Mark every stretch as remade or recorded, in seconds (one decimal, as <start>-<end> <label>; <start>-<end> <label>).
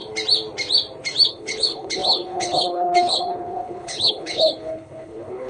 0.0-1.3 recorded; 1.3-5.5 remade